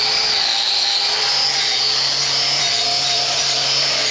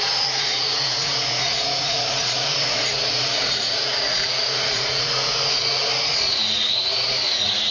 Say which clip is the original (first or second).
first